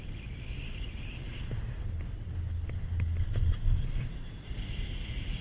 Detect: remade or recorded recorded